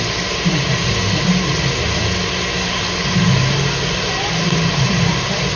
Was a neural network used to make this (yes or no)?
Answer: no